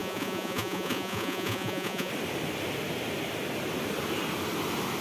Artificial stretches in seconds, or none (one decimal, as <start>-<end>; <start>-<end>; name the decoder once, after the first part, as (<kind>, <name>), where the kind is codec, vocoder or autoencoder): 0.0-2.1 (vocoder, Vocos)